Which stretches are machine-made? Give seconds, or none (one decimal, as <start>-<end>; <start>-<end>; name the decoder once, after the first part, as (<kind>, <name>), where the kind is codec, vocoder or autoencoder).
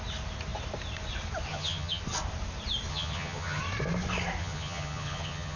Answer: 1.5-2.0 (vocoder, HiFi-GAN); 2.9-3.6; 4.4-5.6